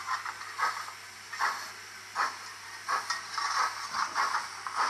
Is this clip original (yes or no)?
yes